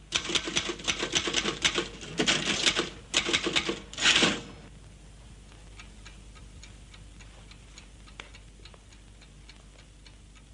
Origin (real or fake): real